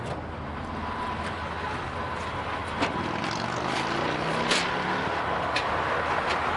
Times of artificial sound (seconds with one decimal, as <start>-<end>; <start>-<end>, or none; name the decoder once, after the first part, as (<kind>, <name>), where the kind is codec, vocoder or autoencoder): none